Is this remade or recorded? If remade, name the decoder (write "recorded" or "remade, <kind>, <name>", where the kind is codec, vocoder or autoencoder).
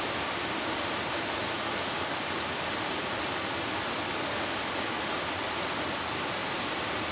recorded